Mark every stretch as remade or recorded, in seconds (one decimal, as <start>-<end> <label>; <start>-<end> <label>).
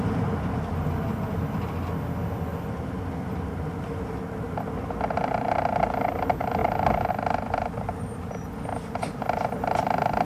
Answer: 0.0-8.7 recorded; 8.7-9.8 remade; 9.8-10.3 recorded